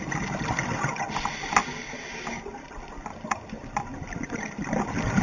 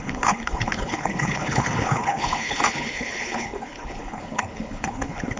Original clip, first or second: first